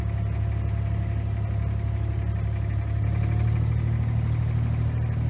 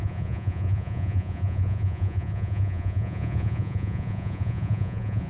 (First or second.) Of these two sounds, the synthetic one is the second